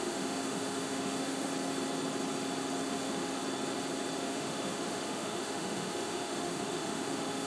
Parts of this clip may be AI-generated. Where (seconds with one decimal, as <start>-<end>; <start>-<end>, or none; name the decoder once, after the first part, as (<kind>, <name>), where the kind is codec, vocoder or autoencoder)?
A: 0.0-1.5 (autoencoder, DAC-VAE); 2.8-3.4; 4.2-7.5